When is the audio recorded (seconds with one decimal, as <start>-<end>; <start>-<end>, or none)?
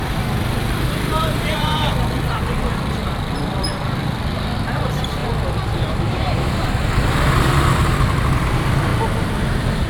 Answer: 5.2-5.9; 8.9-9.5